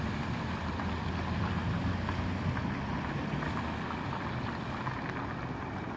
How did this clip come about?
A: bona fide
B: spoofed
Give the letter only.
A